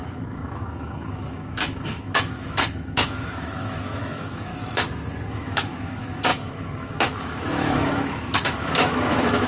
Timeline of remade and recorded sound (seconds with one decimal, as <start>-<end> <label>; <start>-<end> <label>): 0.0-4.5 remade; 4.5-5.3 recorded; 5.3-9.5 remade